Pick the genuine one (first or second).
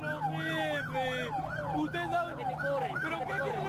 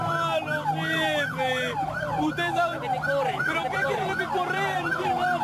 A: first